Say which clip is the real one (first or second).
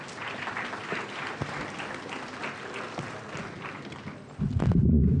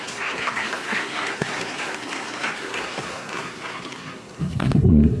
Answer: first